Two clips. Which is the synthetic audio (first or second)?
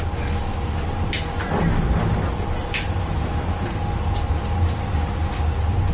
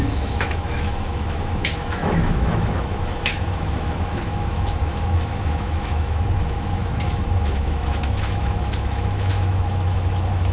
second